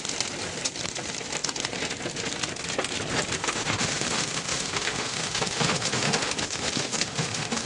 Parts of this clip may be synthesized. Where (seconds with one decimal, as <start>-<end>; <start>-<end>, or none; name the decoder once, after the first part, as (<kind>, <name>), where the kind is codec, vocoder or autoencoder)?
3.4-7.7 (autoencoder, DAC-VAE)